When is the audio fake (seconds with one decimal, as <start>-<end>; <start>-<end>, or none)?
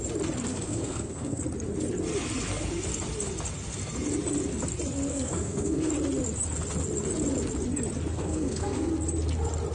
0.5-1.4; 5.1-5.9; 8.1-8.9